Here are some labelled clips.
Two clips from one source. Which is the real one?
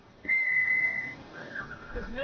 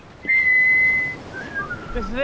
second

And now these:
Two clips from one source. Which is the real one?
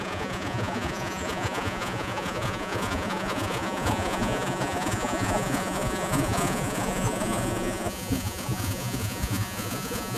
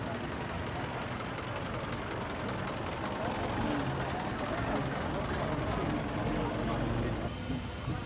second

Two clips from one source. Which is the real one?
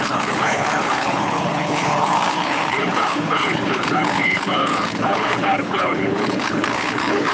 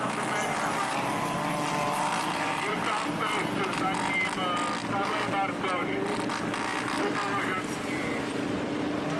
second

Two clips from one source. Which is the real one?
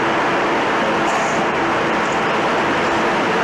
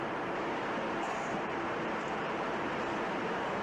first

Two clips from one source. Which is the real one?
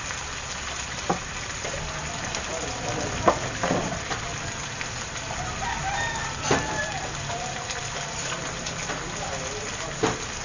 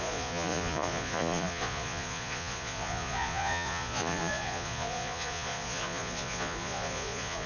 first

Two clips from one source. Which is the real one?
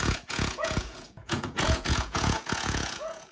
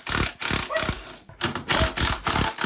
second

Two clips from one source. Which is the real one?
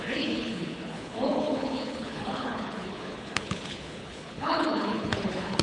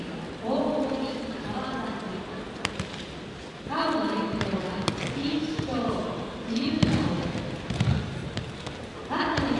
second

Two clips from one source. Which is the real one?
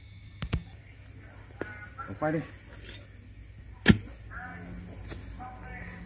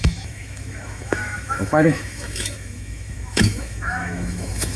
first